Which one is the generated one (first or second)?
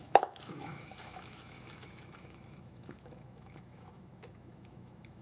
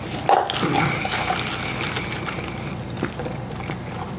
first